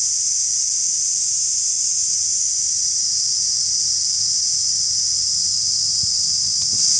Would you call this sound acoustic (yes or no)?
yes